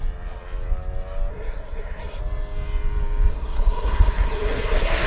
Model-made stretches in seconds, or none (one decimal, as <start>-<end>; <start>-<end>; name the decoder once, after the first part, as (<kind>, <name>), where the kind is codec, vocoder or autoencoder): 1.3-2.2 (codec, SNAC); 3.3-5.1